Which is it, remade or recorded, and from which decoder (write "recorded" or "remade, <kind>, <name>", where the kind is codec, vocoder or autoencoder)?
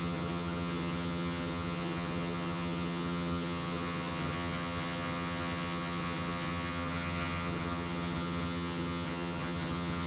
remade, vocoder, HiFi-GAN